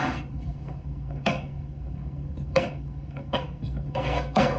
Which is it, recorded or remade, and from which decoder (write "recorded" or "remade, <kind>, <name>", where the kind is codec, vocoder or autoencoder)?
remade, codec, SNAC